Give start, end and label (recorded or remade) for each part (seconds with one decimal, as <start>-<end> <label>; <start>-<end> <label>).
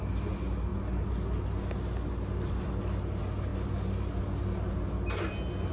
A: 0.0-5.7 recorded